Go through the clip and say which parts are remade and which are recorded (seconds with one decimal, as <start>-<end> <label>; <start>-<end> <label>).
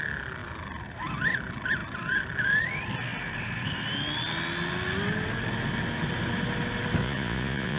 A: 0.0-7.0 recorded; 7.0-7.8 remade